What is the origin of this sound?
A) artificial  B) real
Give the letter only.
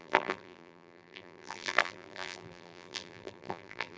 A